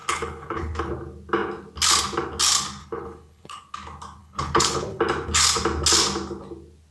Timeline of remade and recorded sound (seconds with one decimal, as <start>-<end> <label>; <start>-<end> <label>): 0.0-0.9 remade; 0.9-2.8 recorded; 2.8-3.6 remade; 3.6-4.2 recorded; 4.2-5.0 remade; 5.0-6.9 recorded